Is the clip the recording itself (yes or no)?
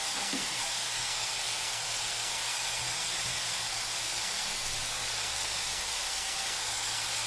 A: no